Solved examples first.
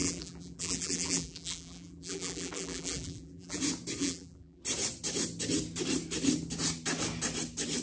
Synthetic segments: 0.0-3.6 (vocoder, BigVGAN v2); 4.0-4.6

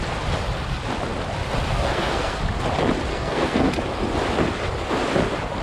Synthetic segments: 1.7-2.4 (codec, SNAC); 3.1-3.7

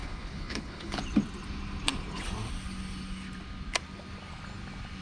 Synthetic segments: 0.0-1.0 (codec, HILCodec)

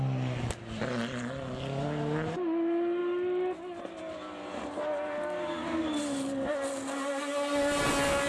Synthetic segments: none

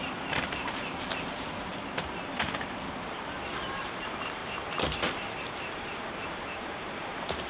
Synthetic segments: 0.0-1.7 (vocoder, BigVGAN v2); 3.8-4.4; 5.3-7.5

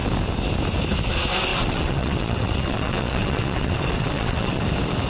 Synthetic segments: 1.5-4.6 (vocoder, WaveNeXt)

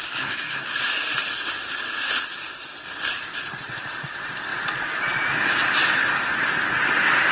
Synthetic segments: none

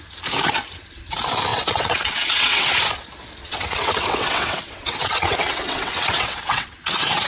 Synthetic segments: 1.5-2.7 (vocoder, WaveNeXt); 3.4-7.3